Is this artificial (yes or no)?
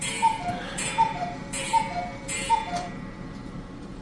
yes